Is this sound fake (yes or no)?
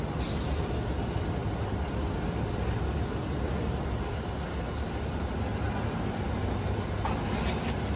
no